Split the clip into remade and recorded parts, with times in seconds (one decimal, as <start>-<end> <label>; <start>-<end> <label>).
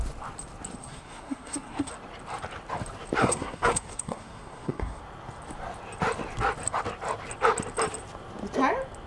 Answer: 0.0-0.8 recorded; 0.8-1.9 remade; 1.9-3.2 recorded; 3.2-5.0 remade; 5.0-9.1 recorded